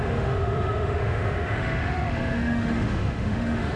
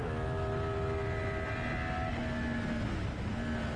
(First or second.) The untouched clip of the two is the second